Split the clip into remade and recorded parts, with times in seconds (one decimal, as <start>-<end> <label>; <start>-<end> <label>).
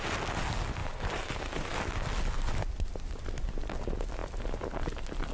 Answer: 0.0-0.8 recorded; 0.8-1.8 remade; 1.8-5.3 recorded